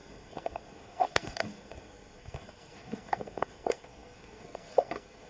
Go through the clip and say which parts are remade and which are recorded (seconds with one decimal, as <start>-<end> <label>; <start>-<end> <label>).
0.0-5.3 remade